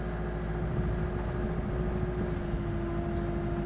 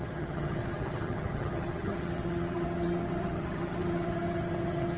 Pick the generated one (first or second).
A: second